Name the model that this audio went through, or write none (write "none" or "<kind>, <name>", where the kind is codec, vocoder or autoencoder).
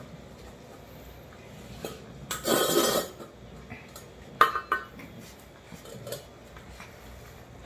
none